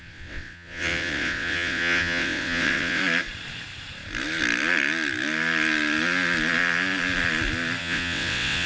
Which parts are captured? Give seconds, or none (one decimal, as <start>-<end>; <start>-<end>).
3.0-7.8